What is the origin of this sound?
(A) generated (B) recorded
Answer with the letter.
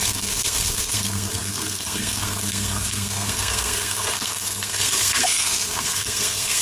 A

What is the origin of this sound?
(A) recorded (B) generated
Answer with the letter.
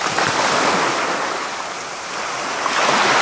A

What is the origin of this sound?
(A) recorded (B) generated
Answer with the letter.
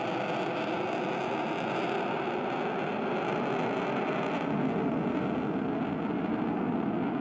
A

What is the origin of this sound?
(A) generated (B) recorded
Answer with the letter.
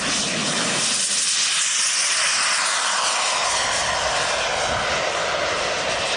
B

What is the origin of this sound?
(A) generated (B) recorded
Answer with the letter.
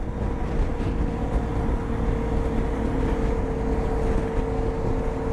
B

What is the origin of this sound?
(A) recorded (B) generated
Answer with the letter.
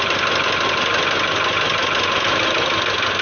A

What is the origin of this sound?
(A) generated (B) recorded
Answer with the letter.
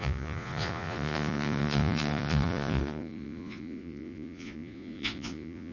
A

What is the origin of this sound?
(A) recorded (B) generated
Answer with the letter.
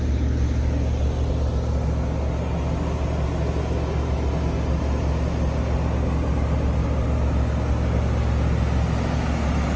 A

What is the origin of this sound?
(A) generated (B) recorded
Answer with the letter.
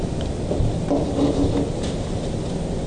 B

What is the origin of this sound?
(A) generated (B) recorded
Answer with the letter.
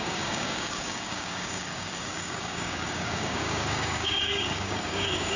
A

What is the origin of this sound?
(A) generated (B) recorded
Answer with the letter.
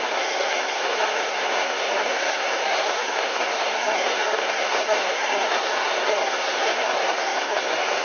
A